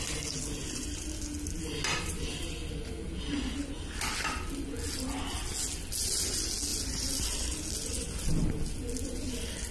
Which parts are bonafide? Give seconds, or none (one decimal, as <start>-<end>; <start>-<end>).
0.0-6.7; 7.2-9.7